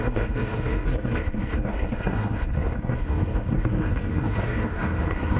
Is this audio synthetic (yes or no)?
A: yes